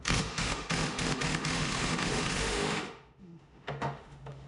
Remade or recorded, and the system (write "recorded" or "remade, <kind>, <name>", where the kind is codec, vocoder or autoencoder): remade, autoencoder, DAC-VAE